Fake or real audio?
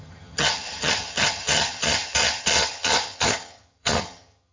fake